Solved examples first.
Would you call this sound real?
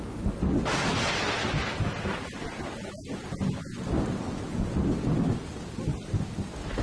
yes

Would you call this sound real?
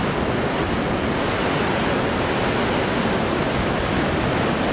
yes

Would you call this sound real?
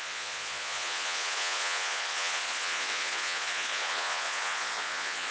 no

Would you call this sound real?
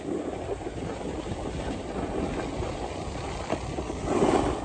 yes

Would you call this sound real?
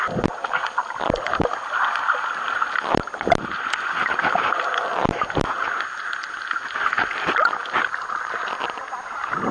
yes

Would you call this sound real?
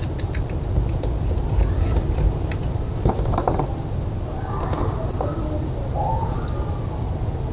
yes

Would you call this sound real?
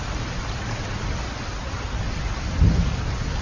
yes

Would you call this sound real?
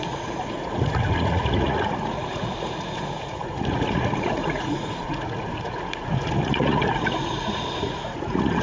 no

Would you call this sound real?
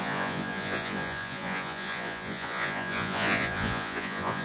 no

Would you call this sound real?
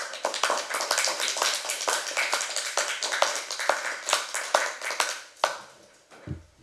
yes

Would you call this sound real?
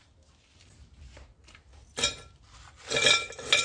yes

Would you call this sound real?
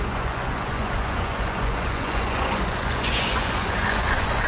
no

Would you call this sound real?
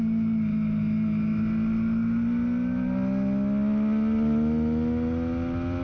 yes